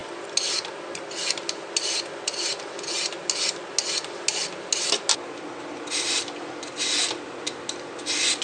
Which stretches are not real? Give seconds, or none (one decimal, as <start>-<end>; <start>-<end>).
none